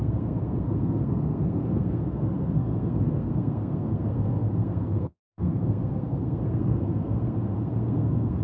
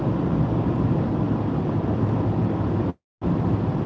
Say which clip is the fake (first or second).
first